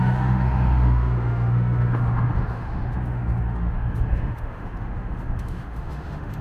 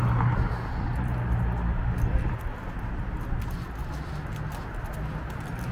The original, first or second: second